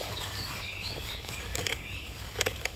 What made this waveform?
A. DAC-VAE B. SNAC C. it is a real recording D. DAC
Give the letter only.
D